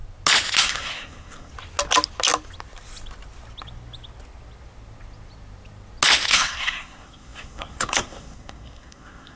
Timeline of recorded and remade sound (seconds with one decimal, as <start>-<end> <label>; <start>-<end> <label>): 0.0-0.6 recorded; 0.6-1.5 remade; 1.5-6.3 recorded; 6.3-9.4 remade

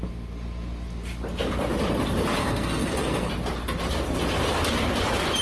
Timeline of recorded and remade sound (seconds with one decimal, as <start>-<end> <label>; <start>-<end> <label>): 0.0-2.4 recorded; 2.4-3.3 remade; 3.3-5.4 recorded